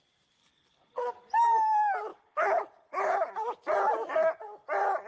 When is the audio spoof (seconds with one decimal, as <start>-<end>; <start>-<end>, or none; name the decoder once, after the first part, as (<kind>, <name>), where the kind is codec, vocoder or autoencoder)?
0.4-1.1 (codec, HILCodec); 2.1-3.3